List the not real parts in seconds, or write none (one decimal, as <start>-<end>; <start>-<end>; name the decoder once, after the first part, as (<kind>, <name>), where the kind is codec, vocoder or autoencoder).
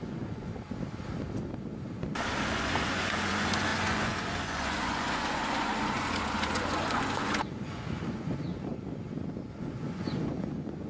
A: 0.0-0.5 (vocoder, Vocos); 2.4-8.7; 9.6-10.9